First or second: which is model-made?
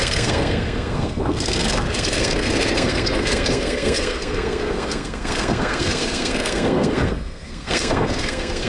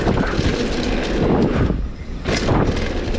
first